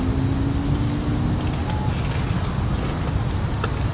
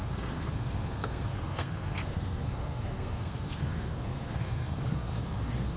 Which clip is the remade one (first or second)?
second